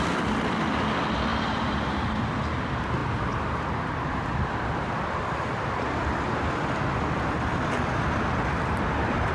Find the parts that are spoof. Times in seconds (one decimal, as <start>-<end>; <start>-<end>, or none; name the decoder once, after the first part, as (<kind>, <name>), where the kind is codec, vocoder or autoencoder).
1.3-2.0 (vocoder, BigVGAN v2); 8.5-9.3